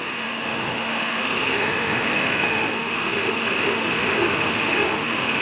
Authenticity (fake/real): fake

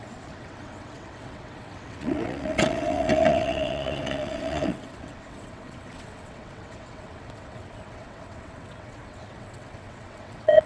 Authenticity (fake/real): fake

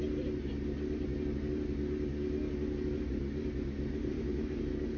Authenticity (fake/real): real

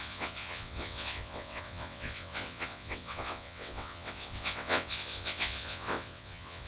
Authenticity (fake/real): fake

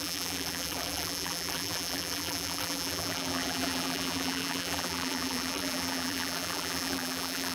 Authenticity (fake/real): fake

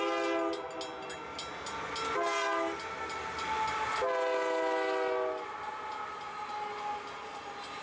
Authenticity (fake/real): real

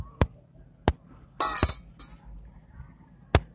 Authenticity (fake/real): real